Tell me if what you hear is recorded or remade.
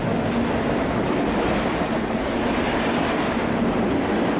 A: recorded